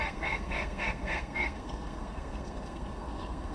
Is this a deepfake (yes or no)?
yes